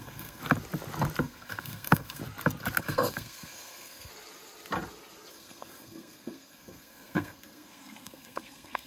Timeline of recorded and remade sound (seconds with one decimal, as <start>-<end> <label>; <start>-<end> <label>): 0.0-0.4 remade; 0.4-1.2 recorded; 1.2-2.2 remade; 2.2-2.8 recorded; 2.8-4.1 remade; 4.1-5.3 recorded; 5.3-8.9 remade